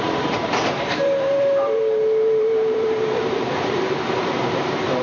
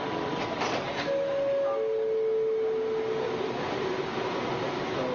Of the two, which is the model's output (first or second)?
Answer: first